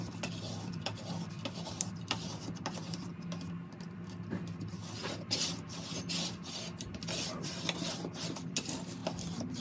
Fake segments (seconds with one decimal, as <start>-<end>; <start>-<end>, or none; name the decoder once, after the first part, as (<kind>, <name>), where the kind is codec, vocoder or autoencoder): 0.0-3.1 (vocoder, BigVGAN v2); 7.9-9.0